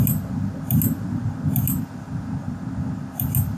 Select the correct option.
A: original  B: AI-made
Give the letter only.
A